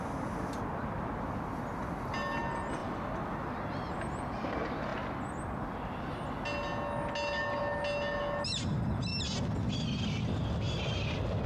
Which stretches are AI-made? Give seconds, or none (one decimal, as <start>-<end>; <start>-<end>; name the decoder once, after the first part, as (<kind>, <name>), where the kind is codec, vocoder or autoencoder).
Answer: none